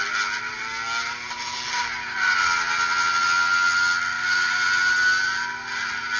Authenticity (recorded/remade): recorded